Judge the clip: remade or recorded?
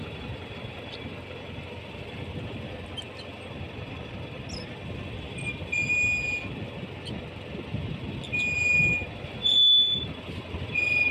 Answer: recorded